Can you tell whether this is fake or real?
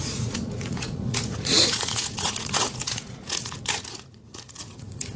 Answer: fake